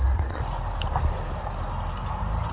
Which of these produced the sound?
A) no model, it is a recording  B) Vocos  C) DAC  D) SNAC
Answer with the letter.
A